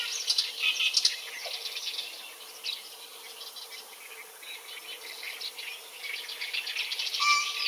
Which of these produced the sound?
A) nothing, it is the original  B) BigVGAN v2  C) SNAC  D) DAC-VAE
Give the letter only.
A